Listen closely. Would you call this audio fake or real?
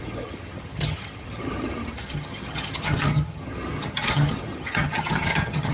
fake